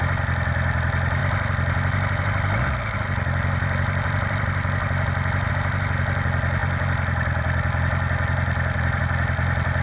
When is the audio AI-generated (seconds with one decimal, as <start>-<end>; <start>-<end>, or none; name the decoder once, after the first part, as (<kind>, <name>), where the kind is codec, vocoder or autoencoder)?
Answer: 1.2-5.5 (vocoder, BigVGAN v2); 6.6-9.0